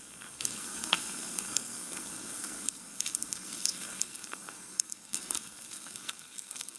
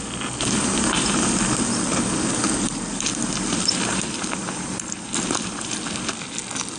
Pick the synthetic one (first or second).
first